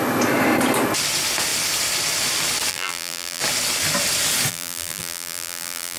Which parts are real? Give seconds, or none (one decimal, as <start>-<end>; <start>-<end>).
0.0-2.7; 3.4-4.5